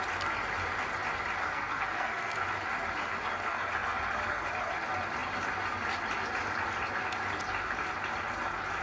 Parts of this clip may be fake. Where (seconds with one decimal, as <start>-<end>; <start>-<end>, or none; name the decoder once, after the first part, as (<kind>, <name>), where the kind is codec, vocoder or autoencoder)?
1.4-2.4 (codec, SNAC)